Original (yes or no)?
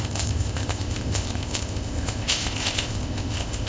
no